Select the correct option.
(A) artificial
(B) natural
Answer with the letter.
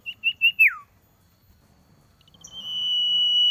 B